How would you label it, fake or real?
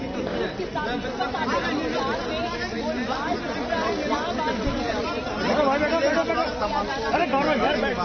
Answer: real